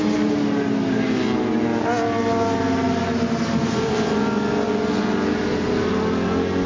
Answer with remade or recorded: recorded